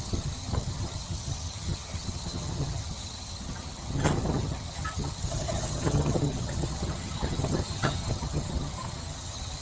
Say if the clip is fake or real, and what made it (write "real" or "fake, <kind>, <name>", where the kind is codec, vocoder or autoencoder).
fake, vocoder, HiFi-GAN